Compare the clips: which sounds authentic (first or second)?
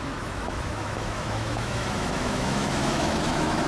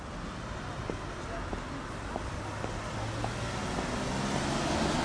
second